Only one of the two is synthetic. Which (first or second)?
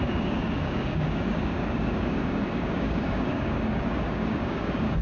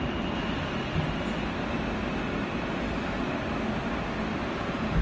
first